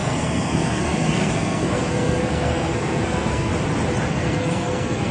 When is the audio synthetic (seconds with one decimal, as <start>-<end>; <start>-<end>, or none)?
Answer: 0.0-3.5; 4.1-5.1